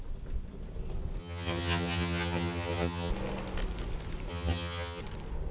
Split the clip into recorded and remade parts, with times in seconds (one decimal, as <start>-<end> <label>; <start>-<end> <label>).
0.0-1.2 recorded; 1.2-3.1 remade; 3.1-4.3 recorded; 4.3-5.0 remade; 5.0-5.5 recorded